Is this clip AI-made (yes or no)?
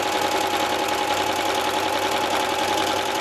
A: no